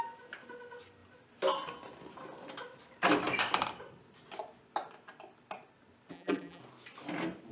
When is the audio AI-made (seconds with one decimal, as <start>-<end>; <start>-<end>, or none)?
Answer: 6.1-6.6